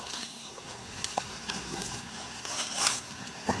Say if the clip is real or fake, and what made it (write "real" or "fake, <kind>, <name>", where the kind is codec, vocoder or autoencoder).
fake, codec, SNAC